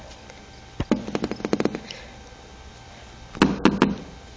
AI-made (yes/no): no